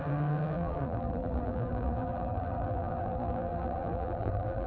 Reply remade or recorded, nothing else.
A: remade